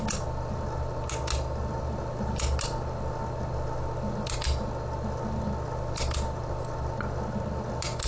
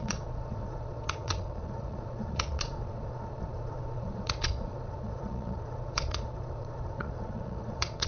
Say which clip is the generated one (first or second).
second